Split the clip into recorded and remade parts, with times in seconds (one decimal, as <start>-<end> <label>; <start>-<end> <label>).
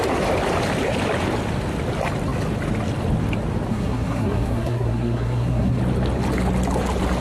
0.0-3.7 recorded; 3.7-5.8 remade; 5.8-7.2 recorded